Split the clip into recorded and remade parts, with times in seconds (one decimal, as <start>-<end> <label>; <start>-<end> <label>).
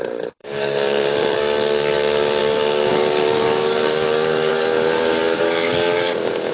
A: 0.0-6.5 remade